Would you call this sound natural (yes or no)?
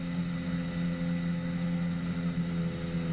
yes